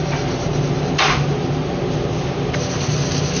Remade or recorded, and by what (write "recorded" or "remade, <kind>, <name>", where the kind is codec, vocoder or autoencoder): recorded